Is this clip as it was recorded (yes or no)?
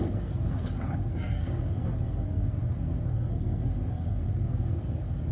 no